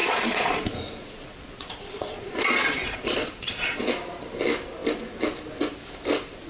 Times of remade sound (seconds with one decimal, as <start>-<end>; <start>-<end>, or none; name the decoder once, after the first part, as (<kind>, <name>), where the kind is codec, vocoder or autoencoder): 0.0-3.9 (vocoder, Vocos)